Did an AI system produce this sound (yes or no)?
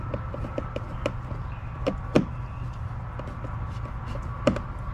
no